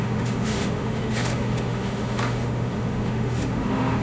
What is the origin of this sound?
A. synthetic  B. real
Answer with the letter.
A